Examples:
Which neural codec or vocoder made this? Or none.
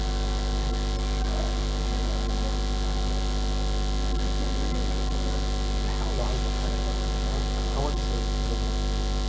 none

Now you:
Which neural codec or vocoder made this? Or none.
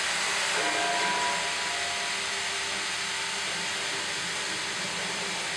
none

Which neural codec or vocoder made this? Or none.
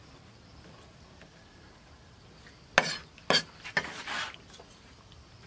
none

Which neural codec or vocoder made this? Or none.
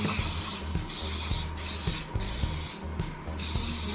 none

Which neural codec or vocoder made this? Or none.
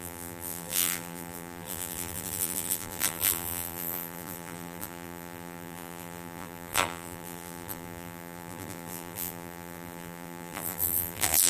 vocoder, BigVGAN v2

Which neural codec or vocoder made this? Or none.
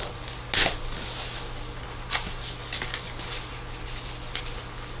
none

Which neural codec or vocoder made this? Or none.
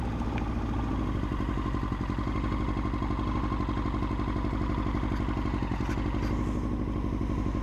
none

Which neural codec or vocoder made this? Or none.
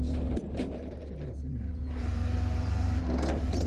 vocoder, BigVGAN v2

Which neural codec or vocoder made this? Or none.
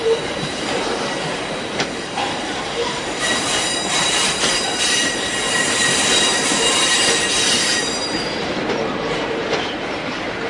vocoder, BigVGAN v2